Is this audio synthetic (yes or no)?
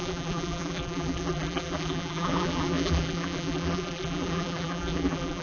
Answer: yes